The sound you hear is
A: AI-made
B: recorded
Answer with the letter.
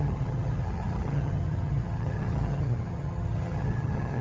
A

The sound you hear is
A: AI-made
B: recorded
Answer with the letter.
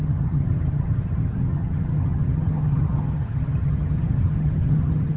A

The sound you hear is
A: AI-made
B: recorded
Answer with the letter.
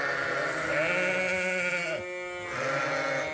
B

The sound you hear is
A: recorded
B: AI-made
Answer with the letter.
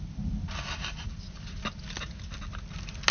A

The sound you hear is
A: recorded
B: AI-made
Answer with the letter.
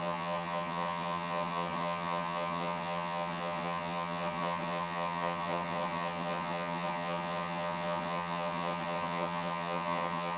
B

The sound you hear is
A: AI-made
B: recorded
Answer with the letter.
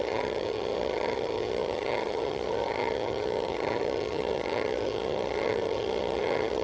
A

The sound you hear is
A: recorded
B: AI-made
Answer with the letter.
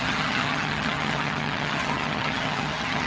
B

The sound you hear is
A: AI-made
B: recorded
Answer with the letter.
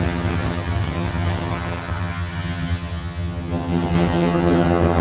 A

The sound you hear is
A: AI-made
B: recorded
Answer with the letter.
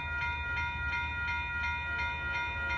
B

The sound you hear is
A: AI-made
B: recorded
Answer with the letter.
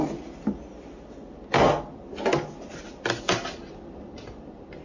B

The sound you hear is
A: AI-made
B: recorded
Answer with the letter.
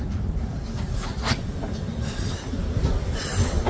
B